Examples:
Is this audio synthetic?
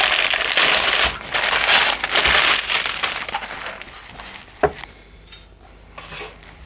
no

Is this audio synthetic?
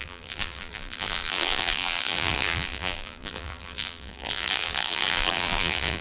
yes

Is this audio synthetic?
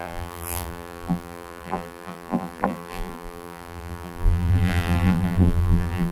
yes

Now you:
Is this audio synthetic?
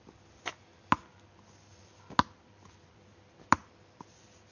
no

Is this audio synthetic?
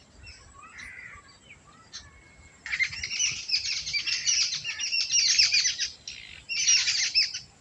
no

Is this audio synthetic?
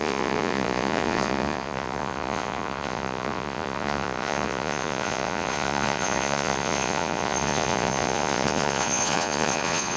yes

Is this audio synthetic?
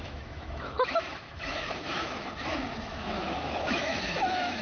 yes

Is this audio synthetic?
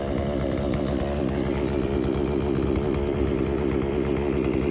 no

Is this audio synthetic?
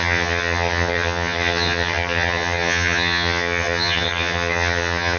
yes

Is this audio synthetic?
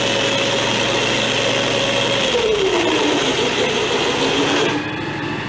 no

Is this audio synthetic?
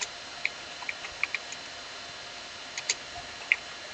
no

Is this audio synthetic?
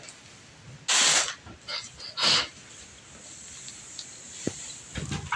no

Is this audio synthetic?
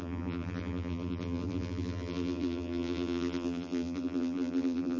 yes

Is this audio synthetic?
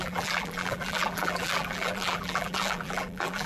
yes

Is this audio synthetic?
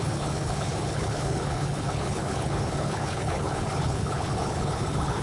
yes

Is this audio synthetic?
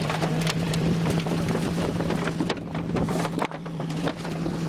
yes